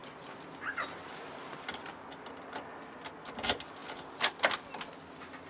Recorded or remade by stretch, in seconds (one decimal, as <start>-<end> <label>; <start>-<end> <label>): 0.0-5.5 recorded